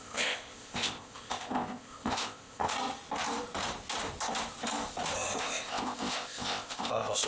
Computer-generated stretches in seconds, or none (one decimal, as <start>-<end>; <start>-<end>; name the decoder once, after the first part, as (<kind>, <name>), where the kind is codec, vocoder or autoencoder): 0.0-2.7 (codec, ZipCodec); 5.4-7.3